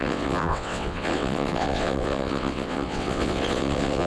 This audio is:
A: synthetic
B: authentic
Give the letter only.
A